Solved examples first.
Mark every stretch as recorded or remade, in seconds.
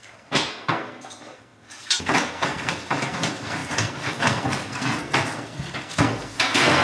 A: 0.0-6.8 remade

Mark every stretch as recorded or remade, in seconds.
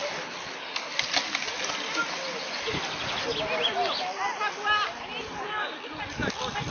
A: 0.0-6.7 recorded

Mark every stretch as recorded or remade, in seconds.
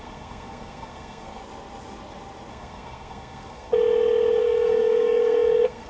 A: 0.0-1.4 remade; 1.4-2.5 recorded; 2.5-3.7 remade; 3.7-4.4 recorded; 4.4-5.9 remade